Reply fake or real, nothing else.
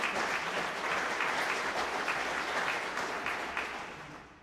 real